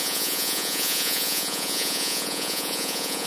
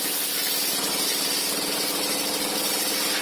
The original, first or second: second